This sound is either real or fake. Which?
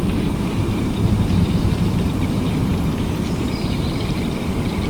fake